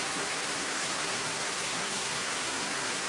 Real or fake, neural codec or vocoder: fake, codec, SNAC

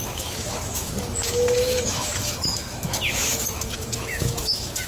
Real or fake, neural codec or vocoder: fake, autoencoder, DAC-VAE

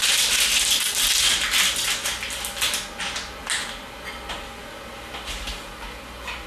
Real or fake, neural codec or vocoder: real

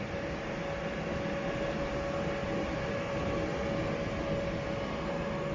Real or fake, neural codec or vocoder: real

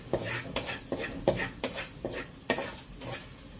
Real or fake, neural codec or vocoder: fake, vocoder, BigVGAN v2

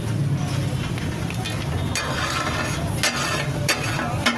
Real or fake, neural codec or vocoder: real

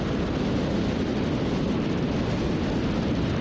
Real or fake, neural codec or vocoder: real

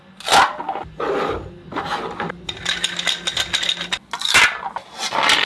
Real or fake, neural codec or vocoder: real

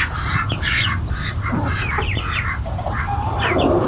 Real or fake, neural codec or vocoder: fake, vocoder, BigVGAN v2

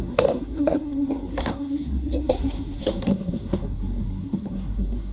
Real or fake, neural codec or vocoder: fake, codec, SNAC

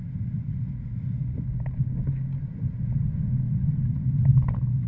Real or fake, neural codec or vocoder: real